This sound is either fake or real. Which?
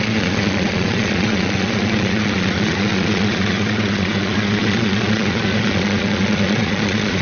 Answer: fake